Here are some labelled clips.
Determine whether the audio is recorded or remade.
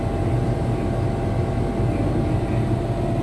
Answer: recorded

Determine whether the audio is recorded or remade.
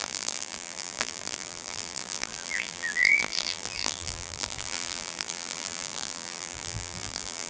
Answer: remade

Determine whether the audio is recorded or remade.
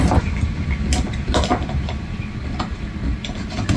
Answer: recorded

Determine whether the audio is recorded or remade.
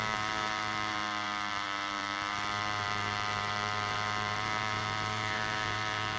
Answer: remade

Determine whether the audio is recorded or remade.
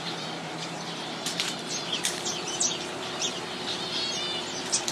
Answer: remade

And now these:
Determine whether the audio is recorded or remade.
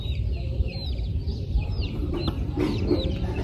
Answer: remade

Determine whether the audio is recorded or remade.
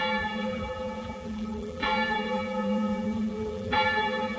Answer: remade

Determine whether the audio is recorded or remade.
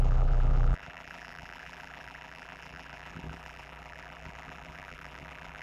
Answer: remade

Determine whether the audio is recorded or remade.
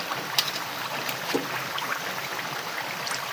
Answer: remade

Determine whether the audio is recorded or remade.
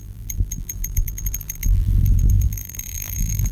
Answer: remade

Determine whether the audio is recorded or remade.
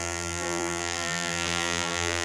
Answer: remade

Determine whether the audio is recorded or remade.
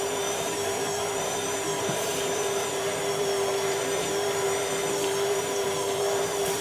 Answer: remade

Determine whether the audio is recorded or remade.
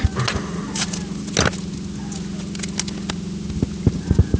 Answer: recorded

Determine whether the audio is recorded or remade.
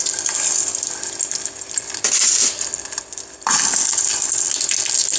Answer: recorded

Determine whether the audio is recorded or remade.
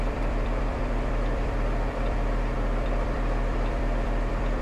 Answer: remade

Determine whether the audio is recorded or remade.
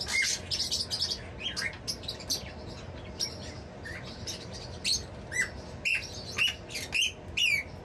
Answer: recorded